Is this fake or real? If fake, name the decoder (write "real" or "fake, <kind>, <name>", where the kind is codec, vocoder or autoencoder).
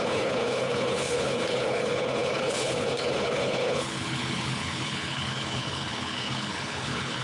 fake, codec, HILCodec